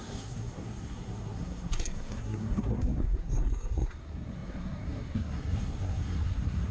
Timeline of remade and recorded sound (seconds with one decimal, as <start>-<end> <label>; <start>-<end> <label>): 0.0-6.7 remade